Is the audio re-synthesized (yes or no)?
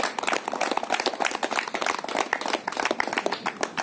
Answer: no